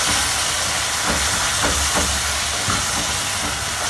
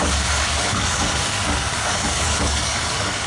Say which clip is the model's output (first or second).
second